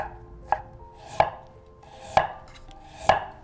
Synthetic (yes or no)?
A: no